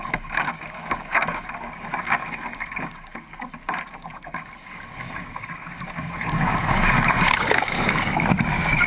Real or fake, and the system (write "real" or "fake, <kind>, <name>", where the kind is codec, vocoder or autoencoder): fake, codec, DAC